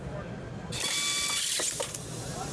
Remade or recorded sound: recorded